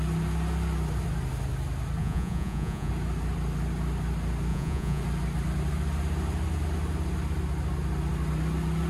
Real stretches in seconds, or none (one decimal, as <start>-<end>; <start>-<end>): 0.0-2.0; 2.9-4.5; 5.0-8.9